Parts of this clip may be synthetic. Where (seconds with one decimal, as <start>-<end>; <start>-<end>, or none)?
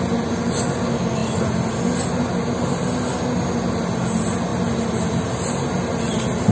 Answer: none